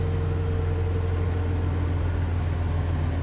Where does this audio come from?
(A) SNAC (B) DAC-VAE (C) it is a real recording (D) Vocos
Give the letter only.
C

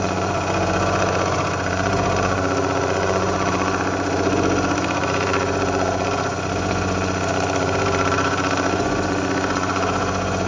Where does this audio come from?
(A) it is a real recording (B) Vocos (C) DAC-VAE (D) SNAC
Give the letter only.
B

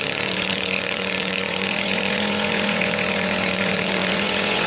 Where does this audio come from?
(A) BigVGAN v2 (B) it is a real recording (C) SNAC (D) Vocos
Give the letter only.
D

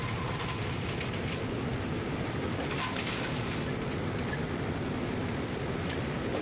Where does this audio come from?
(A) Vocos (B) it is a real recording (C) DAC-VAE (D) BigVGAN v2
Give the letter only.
B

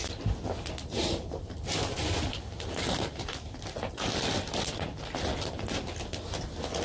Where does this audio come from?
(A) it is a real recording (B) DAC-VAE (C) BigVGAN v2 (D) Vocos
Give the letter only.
A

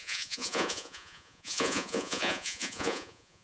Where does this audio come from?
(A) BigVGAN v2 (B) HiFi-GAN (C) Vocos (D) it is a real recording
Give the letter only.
C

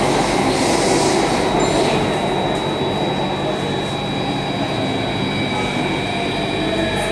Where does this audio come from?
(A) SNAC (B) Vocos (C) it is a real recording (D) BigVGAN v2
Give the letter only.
C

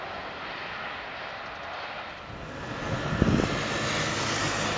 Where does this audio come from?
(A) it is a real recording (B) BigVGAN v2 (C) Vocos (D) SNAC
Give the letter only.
A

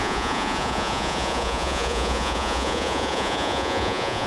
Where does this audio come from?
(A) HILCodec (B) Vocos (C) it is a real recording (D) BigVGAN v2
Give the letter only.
B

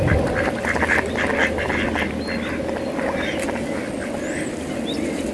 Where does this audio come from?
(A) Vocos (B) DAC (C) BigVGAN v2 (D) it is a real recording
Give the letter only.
D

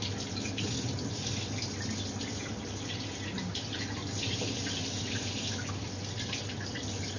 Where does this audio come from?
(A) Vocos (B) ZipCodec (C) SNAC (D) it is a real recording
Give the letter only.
D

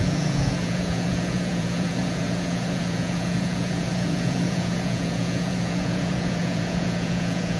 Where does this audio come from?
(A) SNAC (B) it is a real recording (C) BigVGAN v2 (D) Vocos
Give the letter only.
D